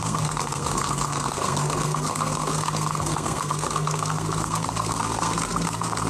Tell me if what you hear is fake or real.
fake